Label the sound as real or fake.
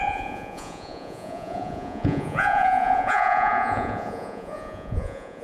fake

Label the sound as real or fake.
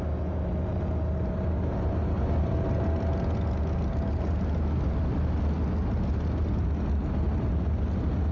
real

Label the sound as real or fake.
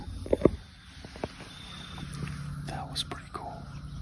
real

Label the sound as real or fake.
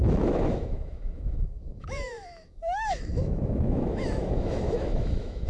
fake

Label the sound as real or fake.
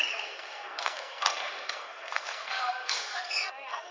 fake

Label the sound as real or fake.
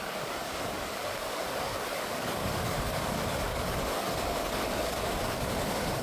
fake